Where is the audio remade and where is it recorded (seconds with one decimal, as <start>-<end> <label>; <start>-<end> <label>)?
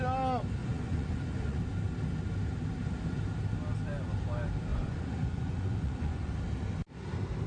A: 0.0-0.6 recorded; 0.6-1.6 remade; 1.6-4.7 recorded; 4.7-6.3 remade; 6.3-7.5 recorded